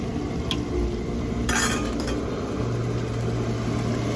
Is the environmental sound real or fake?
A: real